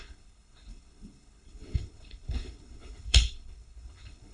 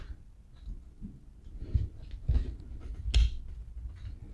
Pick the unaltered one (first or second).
second